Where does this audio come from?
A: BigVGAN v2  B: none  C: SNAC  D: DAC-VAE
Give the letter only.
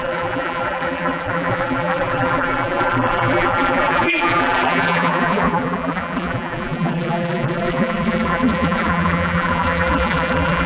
A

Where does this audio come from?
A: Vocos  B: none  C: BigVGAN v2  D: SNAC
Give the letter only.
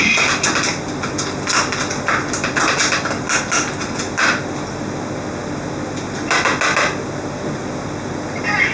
B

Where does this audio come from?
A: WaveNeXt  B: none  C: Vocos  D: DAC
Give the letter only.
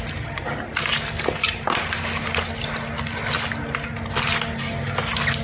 B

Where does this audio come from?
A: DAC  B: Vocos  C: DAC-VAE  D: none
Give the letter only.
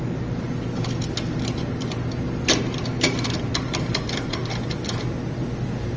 D